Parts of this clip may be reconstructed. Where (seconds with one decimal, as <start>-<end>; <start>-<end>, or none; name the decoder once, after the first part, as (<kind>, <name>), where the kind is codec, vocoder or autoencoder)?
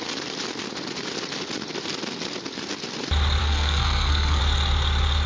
3.4-4.4 (codec, SNAC)